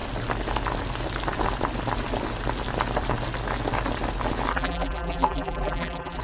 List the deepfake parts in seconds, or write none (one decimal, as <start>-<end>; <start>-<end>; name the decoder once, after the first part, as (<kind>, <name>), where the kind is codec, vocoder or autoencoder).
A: 4.5-6.2 (vocoder, BigVGAN v2)